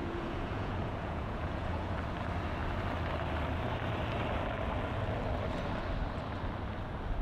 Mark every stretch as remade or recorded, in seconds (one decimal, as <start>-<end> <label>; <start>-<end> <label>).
0.0-1.9 remade; 1.9-7.2 recorded